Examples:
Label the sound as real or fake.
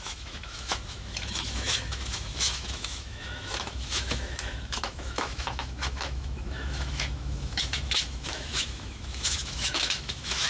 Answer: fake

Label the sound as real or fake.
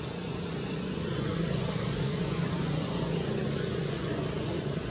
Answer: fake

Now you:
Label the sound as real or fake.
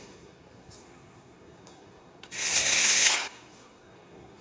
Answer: fake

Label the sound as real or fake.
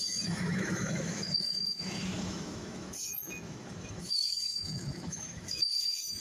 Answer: fake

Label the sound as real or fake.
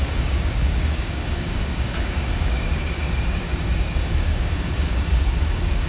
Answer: fake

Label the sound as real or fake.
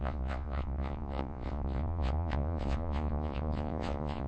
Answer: fake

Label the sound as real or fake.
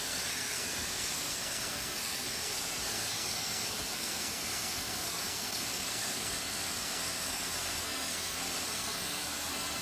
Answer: fake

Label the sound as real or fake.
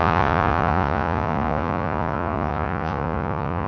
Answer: fake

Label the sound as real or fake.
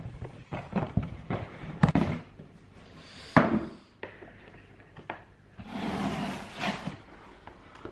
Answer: fake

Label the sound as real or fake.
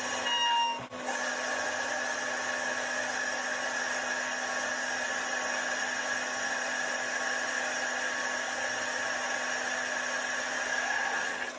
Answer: real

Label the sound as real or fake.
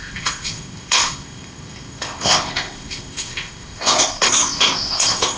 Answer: fake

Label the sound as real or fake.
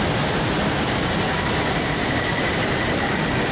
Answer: real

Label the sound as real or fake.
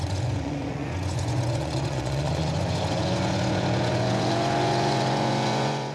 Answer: fake